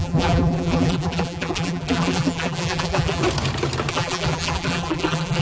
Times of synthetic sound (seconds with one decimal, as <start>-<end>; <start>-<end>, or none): 0.0-3.2; 3.9-5.4